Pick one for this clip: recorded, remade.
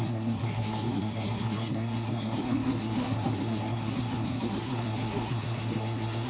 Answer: remade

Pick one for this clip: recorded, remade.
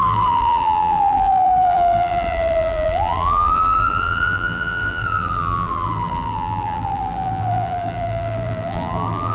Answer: remade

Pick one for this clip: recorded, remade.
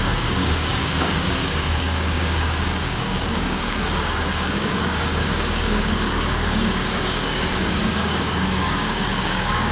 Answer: remade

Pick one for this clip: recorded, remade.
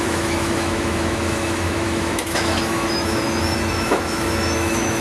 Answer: remade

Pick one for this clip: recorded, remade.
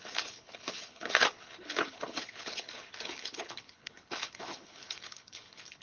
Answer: remade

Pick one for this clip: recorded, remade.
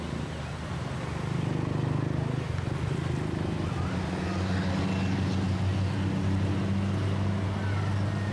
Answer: recorded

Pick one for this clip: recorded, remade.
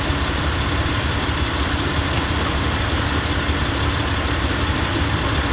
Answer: recorded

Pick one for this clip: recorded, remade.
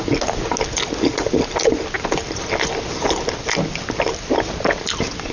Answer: recorded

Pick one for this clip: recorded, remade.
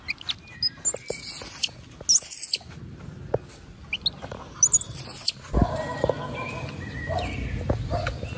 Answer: recorded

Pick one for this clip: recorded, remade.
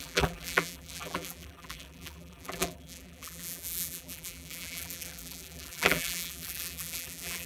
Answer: remade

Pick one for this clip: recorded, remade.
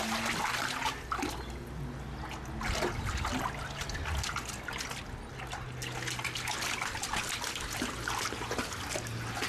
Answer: recorded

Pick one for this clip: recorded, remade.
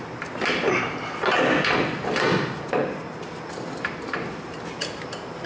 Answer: recorded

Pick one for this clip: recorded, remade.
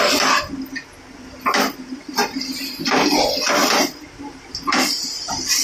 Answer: recorded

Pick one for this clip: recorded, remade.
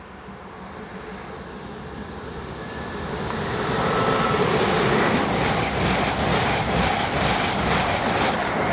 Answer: recorded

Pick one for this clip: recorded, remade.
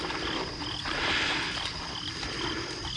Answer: recorded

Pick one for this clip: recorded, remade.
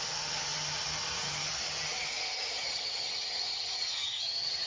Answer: remade